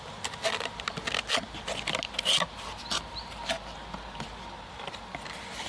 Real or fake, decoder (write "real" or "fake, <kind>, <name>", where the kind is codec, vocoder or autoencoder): real